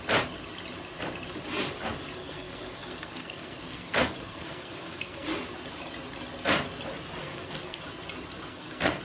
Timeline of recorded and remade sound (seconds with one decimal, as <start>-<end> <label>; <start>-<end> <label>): 0.0-2.2 recorded; 2.2-5.3 remade; 5.3-7.2 recorded; 7.2-7.8 remade; 7.8-8.5 recorded; 8.5-9.0 remade